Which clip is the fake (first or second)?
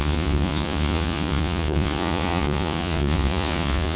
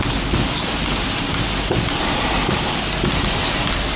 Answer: first